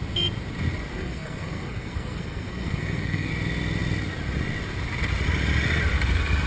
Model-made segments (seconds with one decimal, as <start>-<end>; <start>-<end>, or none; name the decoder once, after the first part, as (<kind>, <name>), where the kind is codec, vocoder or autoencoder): 0.9-3.3 (codec, SNAC)